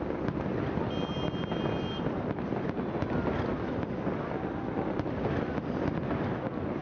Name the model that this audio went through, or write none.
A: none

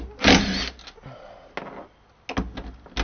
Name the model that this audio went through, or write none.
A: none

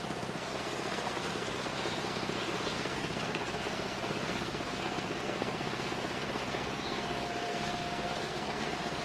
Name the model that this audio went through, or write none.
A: codec, SNAC